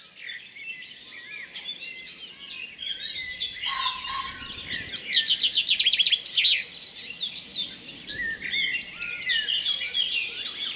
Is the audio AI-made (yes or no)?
no